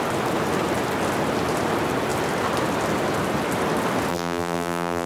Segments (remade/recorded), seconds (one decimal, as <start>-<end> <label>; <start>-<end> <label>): 0.0-4.1 recorded; 4.1-5.1 remade